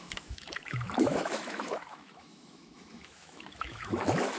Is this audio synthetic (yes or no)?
yes